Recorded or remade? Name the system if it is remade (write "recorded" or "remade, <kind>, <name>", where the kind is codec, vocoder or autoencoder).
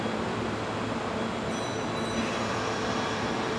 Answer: remade, vocoder, BigVGAN v2